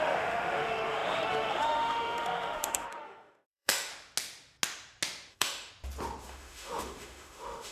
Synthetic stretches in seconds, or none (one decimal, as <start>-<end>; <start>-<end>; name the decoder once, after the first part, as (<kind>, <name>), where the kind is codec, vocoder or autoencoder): 0.0-3.9 (autoencoder, DAC-VAE); 5.3-5.7; 6.2-7.7